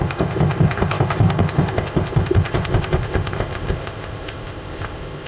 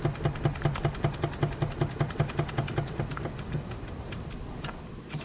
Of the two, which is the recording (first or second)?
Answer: second